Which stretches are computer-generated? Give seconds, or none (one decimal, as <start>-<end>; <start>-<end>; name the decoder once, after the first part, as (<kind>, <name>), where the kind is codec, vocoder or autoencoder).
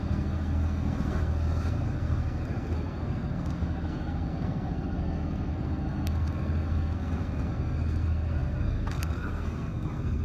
0.0-10.2 (codec, SNAC)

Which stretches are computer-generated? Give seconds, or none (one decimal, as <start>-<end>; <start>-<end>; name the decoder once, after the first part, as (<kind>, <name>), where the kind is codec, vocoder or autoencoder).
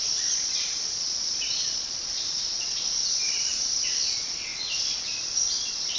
0.0-6.0 (vocoder, Vocos)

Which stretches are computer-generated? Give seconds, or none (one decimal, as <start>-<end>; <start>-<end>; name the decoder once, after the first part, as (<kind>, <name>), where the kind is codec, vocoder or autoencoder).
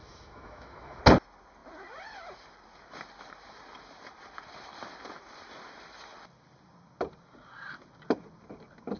0.0-1.0 (autoencoder, DAC-VAE)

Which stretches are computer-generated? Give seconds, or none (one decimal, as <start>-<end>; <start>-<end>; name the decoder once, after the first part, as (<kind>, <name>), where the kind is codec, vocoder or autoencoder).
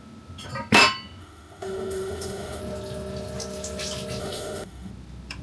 1.2-2.6 (autoencoder, DAC-VAE); 4.2-4.9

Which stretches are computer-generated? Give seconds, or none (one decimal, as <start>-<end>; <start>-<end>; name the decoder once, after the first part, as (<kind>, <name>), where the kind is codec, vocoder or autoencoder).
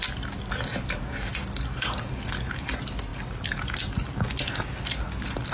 none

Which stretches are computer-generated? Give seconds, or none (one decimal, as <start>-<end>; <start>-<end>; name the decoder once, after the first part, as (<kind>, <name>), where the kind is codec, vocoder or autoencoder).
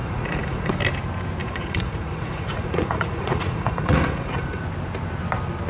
0.0-0.7 (vocoder, Vocos); 1.4-4.6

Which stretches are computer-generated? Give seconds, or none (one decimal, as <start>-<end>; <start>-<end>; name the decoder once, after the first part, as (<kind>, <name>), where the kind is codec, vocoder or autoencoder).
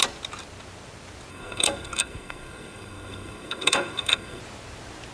1.3-4.4 (codec, SNAC)